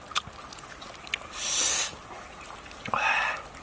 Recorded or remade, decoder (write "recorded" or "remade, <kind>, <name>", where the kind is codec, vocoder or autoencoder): recorded